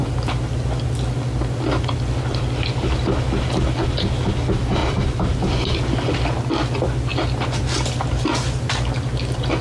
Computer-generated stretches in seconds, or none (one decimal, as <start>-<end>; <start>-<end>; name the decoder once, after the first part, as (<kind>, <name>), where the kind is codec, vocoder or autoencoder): 0.0-0.5 (vocoder, BigVGAN v2); 4.8-5.5; 7.1-7.6